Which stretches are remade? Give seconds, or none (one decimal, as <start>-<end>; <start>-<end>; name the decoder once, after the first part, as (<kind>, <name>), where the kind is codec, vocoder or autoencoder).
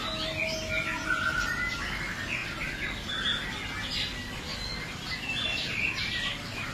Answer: none